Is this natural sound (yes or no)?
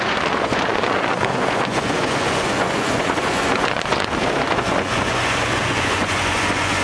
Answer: no